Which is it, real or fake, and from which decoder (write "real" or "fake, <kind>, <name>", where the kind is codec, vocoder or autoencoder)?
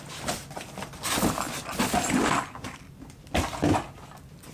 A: real